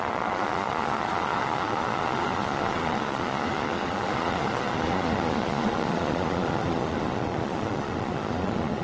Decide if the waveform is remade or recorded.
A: remade